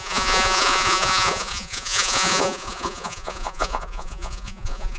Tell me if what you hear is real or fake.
fake